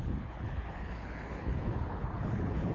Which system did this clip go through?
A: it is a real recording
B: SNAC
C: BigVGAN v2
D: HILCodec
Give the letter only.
D